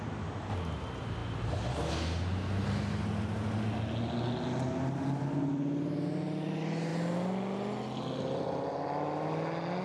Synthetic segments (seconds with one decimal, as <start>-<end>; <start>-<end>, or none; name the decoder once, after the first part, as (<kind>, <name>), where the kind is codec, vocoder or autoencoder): none